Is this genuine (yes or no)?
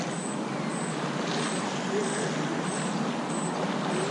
yes